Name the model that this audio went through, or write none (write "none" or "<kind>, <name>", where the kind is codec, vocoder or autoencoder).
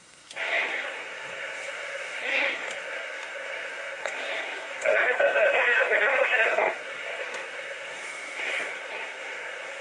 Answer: codec, SNAC